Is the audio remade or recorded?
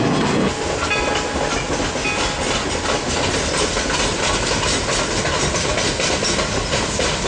recorded